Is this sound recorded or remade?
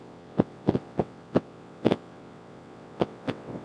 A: remade